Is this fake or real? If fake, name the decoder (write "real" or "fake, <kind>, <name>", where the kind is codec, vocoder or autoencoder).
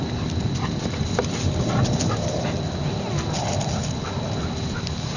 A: real